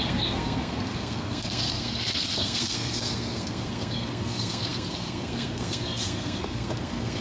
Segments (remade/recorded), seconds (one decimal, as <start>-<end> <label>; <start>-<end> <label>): 0.0-7.2 remade